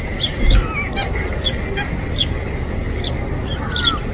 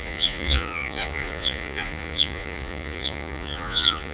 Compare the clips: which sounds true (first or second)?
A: first